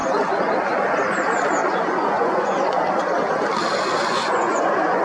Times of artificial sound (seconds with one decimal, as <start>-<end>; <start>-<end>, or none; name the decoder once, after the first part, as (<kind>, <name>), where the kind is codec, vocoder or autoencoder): 1.6-2.8 (vocoder, Vocos); 4.0-5.0